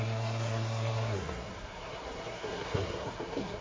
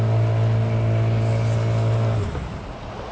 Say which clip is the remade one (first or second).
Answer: first